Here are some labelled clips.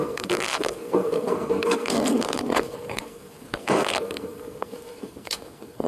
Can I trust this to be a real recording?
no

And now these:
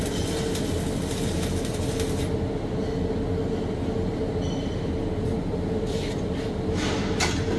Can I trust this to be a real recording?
yes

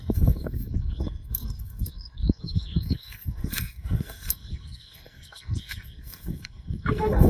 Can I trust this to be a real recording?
no